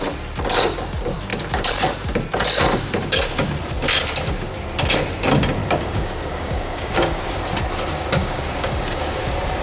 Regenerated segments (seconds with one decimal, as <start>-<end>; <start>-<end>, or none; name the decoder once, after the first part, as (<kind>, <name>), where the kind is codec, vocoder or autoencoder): 5.6-7.2 (codec, DAC); 8.2-9.2

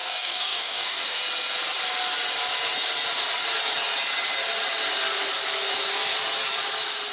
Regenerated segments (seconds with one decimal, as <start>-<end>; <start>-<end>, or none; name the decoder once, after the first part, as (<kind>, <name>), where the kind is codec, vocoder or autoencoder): 0.0-1.2 (codec, DAC)

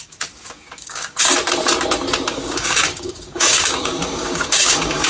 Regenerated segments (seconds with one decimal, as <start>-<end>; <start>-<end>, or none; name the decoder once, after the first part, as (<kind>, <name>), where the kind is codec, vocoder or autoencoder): 0.0-1.3 (codec, DAC); 2.3-5.1